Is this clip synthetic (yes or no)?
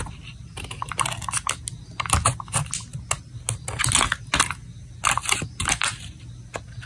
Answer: no